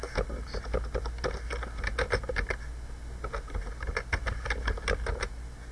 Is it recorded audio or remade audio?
recorded